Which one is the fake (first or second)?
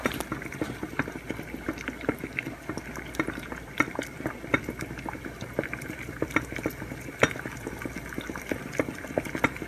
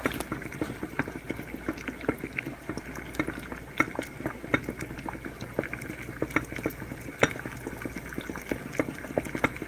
first